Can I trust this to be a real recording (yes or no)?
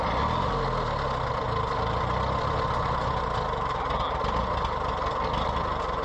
yes